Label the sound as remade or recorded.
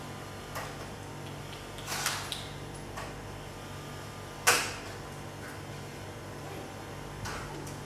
recorded